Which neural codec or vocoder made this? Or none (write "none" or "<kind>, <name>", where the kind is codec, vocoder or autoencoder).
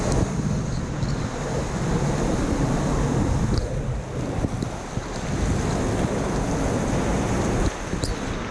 none